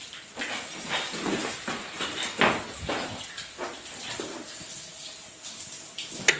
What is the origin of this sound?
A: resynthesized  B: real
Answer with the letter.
B